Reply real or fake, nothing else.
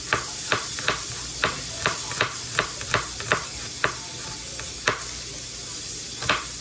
real